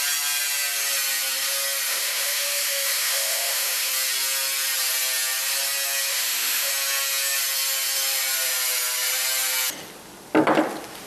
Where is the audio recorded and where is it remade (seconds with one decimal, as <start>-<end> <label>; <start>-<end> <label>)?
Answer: 0.0-1.9 recorded; 1.9-3.9 remade; 3.9-6.1 recorded; 6.1-6.7 remade; 6.7-11.1 recorded